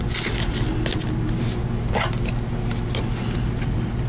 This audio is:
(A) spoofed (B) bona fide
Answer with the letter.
B